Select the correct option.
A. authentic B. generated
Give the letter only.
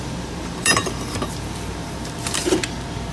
B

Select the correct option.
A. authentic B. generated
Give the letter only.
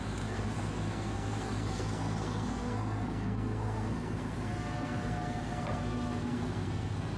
B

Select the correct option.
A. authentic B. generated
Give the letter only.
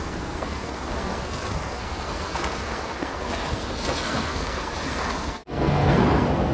B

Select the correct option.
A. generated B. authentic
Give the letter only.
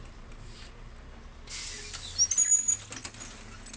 B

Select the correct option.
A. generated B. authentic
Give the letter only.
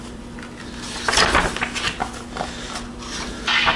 B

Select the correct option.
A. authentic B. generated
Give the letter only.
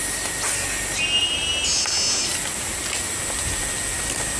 A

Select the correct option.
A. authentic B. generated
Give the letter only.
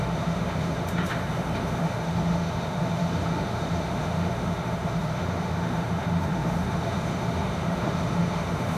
B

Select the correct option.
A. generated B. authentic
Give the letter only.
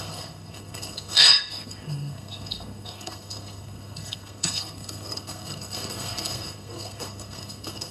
A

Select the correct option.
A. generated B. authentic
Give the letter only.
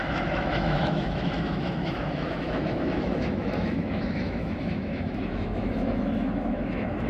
A